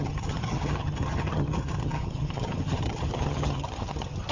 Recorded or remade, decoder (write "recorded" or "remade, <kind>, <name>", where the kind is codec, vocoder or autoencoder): remade, vocoder, HiFi-GAN